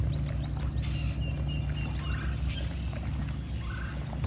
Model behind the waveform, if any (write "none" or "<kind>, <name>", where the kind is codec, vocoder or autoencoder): none